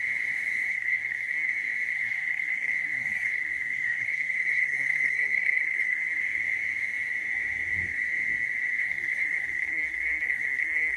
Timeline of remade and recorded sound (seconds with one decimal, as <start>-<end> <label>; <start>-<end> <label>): 0.0-0.7 recorded; 0.7-1.5 remade; 1.5-1.9 recorded; 1.9-6.2 remade; 6.2-8.8 recorded; 8.8-11.0 remade